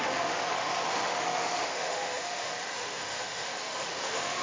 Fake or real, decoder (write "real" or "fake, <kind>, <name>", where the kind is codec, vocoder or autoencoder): fake, autoencoder, DAC-VAE